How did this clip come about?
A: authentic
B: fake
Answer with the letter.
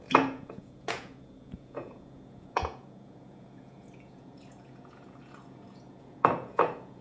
B